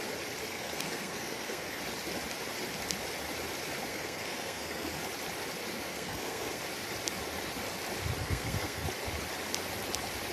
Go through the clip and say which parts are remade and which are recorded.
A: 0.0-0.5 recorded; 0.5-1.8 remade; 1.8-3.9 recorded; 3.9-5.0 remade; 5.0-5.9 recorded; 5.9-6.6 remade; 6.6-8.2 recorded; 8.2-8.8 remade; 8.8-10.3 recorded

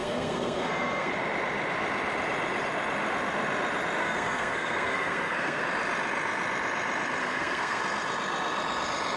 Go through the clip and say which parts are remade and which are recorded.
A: 0.0-1.1 remade; 1.1-4.0 recorded; 4.0-5.6 remade; 5.6-7.2 recorded; 7.2-7.8 remade; 7.8-9.2 recorded

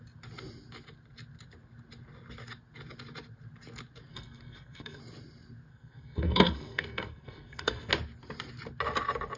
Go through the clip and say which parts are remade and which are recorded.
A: 0.0-4.1 recorded; 4.1-5.0 remade; 5.0-5.7 recorded; 5.7-7.9 remade; 7.9-9.4 recorded

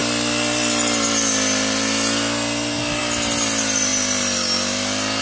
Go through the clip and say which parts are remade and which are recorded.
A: 0.0-5.2 recorded

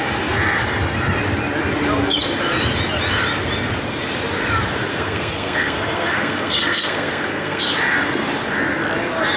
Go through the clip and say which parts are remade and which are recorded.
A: 0.0-4.9 recorded; 4.9-7.6 remade; 7.6-9.4 recorded